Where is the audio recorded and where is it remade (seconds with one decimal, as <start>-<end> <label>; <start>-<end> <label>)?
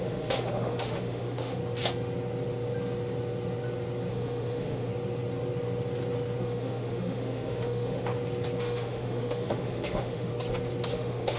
0.0-1.6 remade; 1.6-4.1 recorded; 4.1-4.9 remade; 4.9-6.4 recorded; 6.4-8.1 remade; 8.1-8.6 recorded; 8.6-10.3 remade; 10.3-10.9 recorded; 10.9-11.4 remade